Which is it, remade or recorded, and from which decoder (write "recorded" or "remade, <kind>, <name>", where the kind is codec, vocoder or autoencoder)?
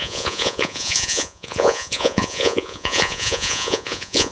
remade, vocoder, Vocos